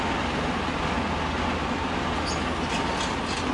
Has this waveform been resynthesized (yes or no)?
no